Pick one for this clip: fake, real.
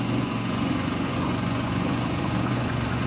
fake